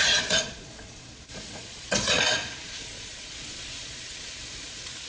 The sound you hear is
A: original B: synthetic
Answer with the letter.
B